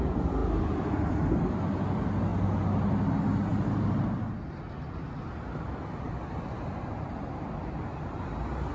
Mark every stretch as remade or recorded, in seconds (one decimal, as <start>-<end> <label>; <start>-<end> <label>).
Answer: 0.0-8.7 recorded